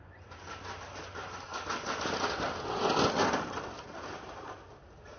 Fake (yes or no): no